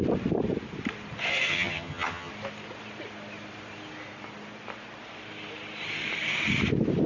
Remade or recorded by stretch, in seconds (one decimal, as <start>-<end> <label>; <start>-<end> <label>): 0.0-1.5 recorded; 1.5-2.3 remade; 2.3-7.1 recorded